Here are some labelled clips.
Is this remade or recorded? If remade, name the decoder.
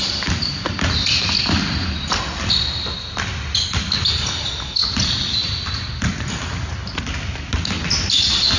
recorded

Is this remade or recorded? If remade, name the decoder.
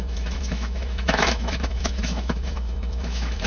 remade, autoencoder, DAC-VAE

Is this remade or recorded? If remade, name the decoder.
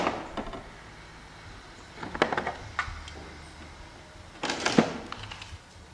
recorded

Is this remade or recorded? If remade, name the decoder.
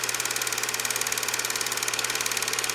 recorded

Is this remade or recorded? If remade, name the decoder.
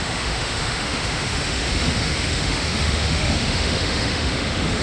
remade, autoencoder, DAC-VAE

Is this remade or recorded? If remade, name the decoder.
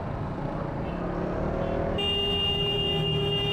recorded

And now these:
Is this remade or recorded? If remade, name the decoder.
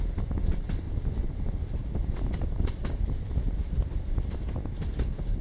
recorded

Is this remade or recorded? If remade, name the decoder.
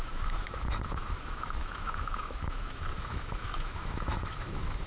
remade, autoencoder, DAC-VAE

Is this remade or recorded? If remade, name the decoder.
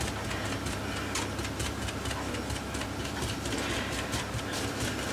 recorded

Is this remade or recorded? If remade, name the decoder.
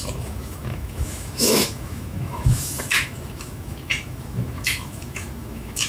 remade, autoencoder, DAC-VAE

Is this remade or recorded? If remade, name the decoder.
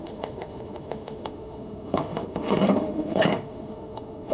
remade, autoencoder, DAC-VAE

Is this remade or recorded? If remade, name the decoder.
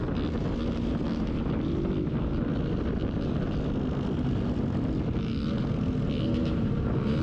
recorded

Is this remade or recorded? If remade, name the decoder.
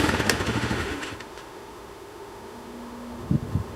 remade, autoencoder, DAC-VAE